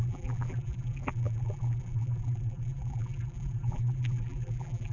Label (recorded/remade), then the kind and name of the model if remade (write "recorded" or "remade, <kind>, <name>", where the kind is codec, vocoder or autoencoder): remade, vocoder, BigVGAN v2